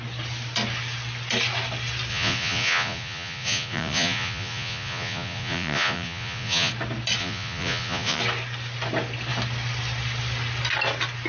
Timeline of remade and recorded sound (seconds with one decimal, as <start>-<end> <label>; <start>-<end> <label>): 0.0-2.1 recorded; 2.1-6.7 remade; 6.7-7.2 recorded; 7.2-8.2 remade; 8.2-11.3 recorded